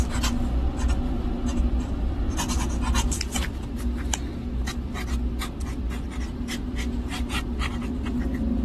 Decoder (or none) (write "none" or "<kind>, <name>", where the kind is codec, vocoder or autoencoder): none